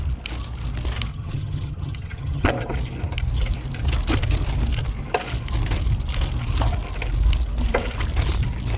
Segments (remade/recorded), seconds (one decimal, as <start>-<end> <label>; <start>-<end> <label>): 0.0-1.1 recorded; 1.1-2.5 remade; 2.5-8.8 recorded